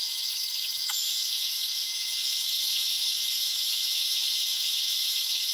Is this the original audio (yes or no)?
no